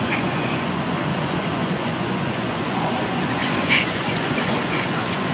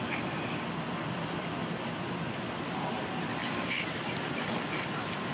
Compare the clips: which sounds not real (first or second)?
first